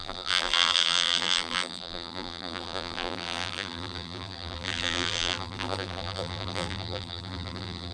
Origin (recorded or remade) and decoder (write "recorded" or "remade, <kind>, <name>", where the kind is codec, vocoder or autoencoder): remade, vocoder, BigVGAN v2